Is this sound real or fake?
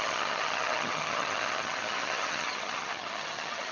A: fake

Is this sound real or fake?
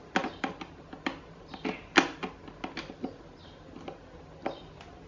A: real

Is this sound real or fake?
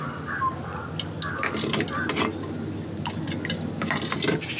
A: real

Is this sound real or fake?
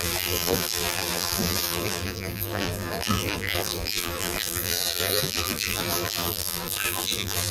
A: fake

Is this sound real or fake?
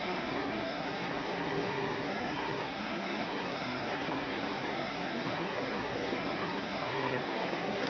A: fake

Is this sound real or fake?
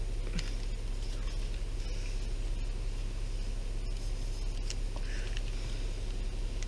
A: real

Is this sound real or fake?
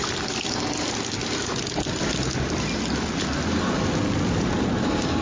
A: real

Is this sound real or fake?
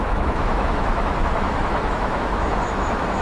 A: fake